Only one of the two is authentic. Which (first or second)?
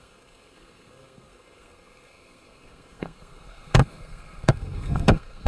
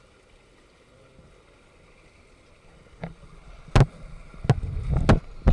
second